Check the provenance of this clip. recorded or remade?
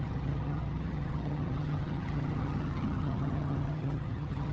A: remade